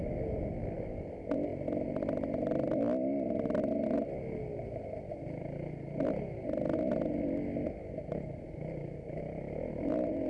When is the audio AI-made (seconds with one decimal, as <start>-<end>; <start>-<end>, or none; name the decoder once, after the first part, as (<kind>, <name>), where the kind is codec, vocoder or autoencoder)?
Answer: 1.5-6.2 (vocoder, BigVGAN v2)